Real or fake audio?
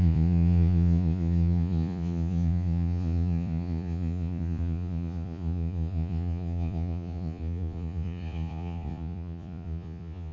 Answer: fake